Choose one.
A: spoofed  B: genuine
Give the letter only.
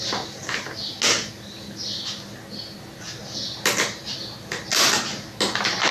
B